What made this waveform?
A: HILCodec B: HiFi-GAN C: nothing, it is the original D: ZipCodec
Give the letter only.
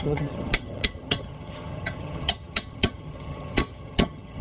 B